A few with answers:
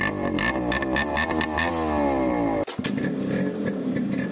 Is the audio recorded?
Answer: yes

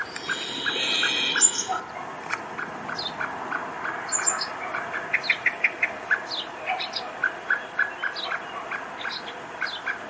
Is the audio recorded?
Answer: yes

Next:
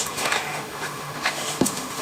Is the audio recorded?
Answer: no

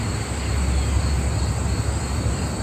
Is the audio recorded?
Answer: yes